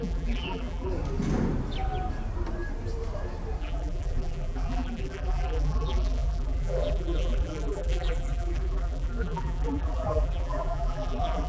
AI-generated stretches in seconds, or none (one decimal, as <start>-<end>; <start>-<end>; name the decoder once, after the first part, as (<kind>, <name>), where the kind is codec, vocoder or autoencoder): 0.0-0.9 (vocoder, BigVGAN v2); 3.6-11.5